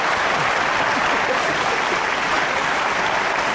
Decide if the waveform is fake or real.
real